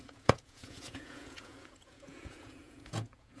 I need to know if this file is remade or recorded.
remade